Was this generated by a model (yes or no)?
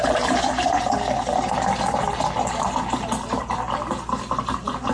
no